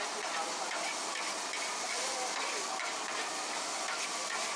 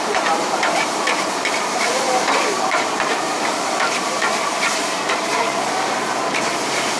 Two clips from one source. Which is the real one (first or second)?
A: first